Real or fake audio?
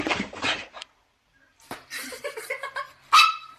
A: fake